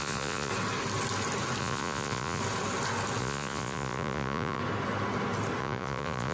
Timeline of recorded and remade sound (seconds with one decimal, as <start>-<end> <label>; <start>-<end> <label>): 0.0-0.5 remade; 0.5-1.6 recorded; 1.6-2.4 remade; 2.4-3.2 recorded; 3.2-4.6 remade; 4.6-5.6 recorded; 5.6-6.3 remade